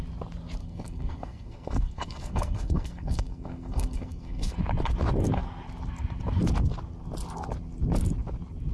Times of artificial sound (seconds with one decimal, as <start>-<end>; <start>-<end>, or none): 0.6-4.6